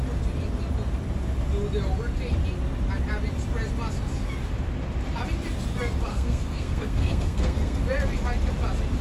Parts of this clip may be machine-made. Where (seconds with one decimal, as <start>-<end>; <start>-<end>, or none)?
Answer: 6.1-7.8